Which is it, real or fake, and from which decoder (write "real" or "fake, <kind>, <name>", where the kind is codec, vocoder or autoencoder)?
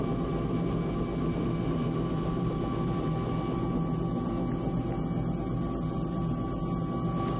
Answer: real